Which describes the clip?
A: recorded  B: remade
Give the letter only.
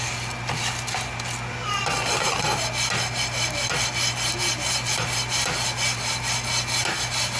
A